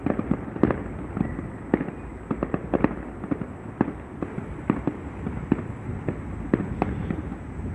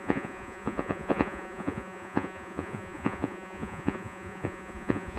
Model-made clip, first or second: second